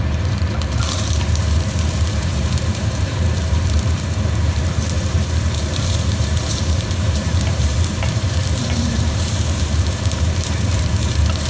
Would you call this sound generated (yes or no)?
yes